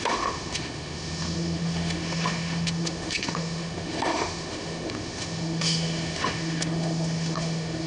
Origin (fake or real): fake